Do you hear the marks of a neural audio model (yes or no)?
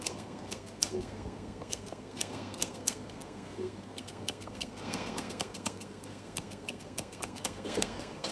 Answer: yes